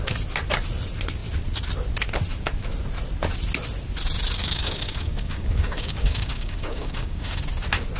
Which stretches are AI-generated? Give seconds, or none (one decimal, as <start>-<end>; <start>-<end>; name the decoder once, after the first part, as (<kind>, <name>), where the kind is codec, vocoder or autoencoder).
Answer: 4.4-7.4 (codec, DAC)